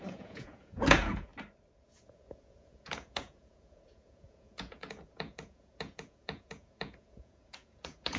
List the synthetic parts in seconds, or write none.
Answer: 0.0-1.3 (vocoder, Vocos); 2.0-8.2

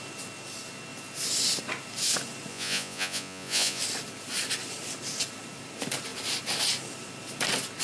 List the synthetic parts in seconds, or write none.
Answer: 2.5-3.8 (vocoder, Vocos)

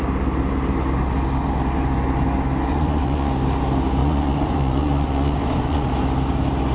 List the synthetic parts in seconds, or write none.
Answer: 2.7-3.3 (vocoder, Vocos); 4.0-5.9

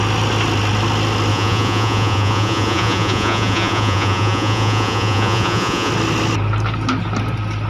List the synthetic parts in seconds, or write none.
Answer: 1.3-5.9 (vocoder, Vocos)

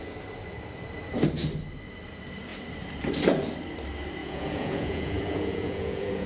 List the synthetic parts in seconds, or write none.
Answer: 4.2-6.3 (vocoder, Vocos)